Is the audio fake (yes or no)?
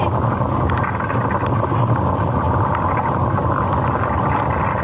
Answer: no